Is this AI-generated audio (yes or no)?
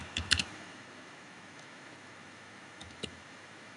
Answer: yes